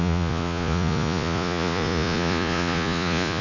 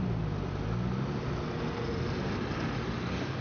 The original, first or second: second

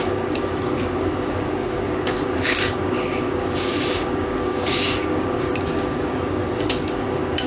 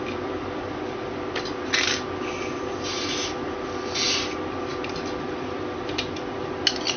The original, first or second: second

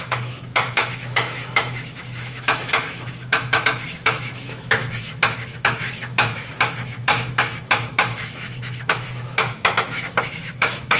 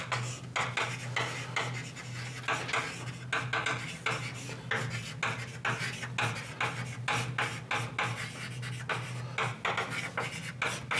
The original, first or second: second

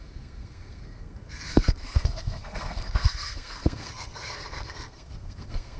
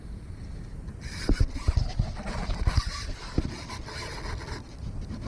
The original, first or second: second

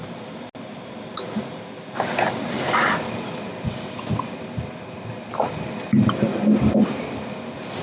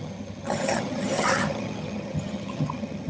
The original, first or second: first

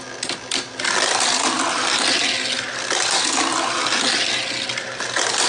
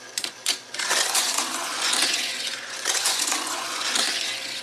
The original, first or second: first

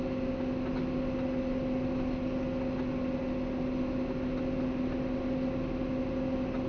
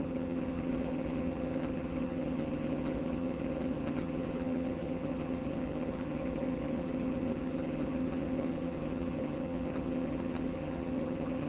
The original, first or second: first